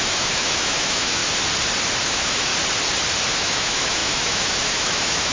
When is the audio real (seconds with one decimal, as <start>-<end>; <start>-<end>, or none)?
1.2-2.0; 2.5-3.3